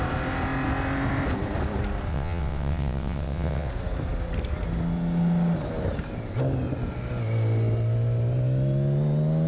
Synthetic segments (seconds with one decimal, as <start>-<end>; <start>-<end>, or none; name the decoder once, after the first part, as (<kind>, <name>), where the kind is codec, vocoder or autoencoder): 2.1-3.7 (vocoder, WaveNeXt)